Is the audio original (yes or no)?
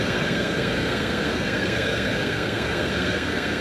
no